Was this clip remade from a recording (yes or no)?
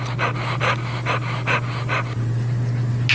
no